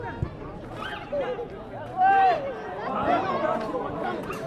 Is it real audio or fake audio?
real